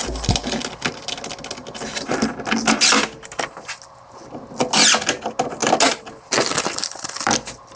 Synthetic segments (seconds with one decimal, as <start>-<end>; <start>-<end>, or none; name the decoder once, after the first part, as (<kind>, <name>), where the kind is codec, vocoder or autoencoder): none